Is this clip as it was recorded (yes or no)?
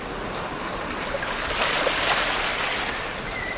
yes